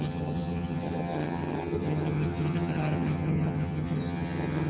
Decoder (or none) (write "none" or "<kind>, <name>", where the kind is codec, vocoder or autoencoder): vocoder, HiFi-GAN